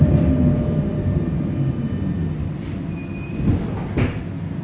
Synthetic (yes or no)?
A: no